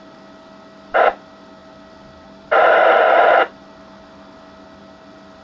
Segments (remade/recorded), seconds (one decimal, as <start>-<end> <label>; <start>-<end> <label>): 0.0-1.6 remade; 1.6-4.8 recorded; 4.8-5.4 remade

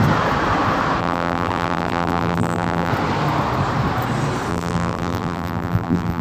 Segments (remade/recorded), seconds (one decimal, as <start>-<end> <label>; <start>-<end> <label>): 0.0-1.0 recorded; 1.0-2.9 remade; 2.9-4.5 recorded; 4.5-6.2 remade

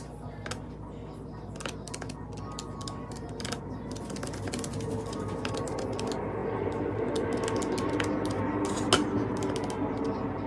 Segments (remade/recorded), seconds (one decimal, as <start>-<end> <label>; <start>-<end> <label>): 0.0-10.5 recorded

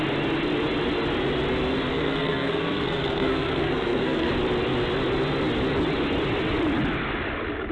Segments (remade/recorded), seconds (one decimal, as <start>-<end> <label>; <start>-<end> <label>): 0.0-1.9 recorded; 1.9-4.3 remade; 4.3-7.7 recorded

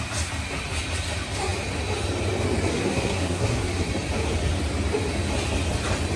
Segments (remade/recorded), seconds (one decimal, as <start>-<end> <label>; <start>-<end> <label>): 0.0-2.7 recorded; 2.7-3.9 remade; 3.9-6.2 recorded

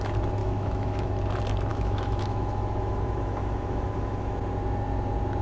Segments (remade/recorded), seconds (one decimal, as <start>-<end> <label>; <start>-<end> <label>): 0.0-0.4 recorded; 0.4-1.1 remade; 1.1-1.7 recorded; 1.7-4.4 remade; 4.4-5.4 recorded

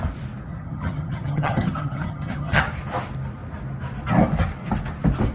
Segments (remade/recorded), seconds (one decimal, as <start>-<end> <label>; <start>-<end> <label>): 0.0-0.5 recorded; 0.5-2.6 remade; 2.6-5.3 recorded